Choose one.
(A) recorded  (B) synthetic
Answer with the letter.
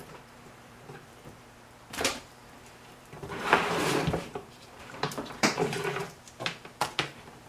B